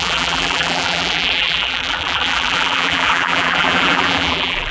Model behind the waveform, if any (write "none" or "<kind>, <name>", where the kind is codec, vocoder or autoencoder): vocoder, BigVGAN v2